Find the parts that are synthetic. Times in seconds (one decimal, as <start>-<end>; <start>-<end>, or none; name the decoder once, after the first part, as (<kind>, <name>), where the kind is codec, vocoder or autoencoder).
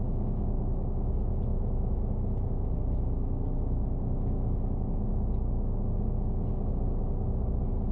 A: none